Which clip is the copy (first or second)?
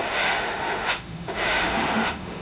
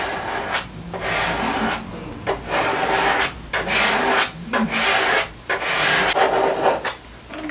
first